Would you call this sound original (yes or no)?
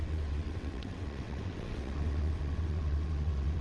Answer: no